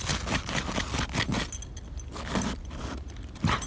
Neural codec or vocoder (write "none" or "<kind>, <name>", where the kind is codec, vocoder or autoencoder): none